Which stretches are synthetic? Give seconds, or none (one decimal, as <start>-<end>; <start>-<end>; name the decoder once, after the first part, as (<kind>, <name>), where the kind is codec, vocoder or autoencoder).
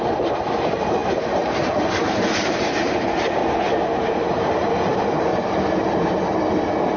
0.0-3.4 (vocoder, BigVGAN v2); 4.1-5.3; 5.9-7.0